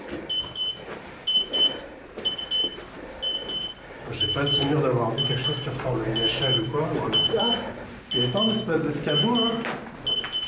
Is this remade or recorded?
recorded